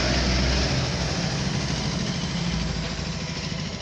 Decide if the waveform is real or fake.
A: real